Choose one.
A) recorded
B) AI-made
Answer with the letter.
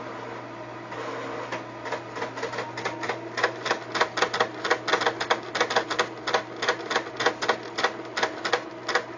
A